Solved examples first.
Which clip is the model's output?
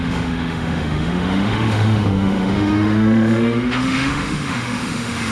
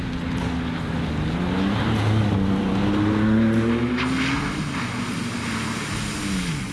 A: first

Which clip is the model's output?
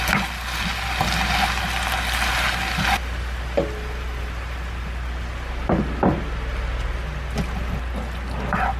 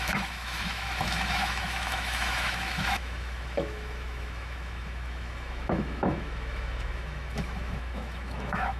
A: second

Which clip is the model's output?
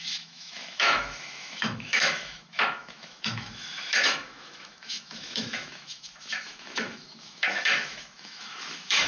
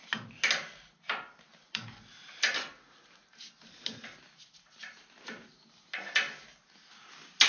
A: first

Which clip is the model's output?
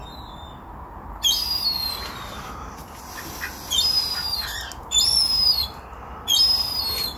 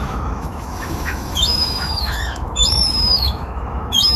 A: second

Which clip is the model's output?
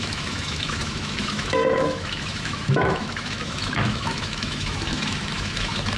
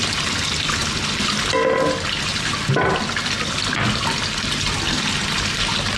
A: first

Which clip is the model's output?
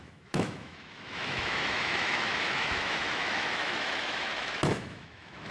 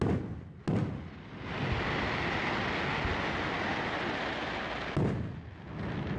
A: first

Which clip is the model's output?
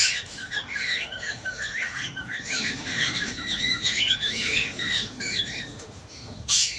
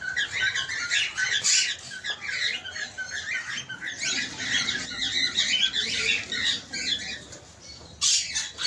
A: first